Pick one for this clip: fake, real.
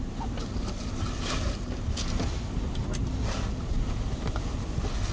real